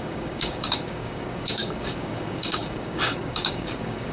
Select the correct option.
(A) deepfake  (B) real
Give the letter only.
A